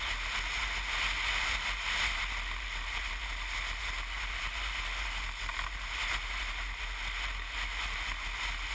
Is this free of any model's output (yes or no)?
yes